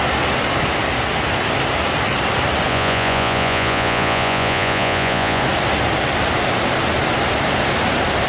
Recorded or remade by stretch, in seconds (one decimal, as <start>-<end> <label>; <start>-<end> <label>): 0.0-2.7 recorded; 2.7-5.4 remade; 5.4-8.3 recorded